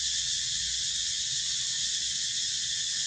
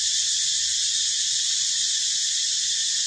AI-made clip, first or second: first